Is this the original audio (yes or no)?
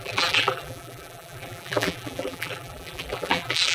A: no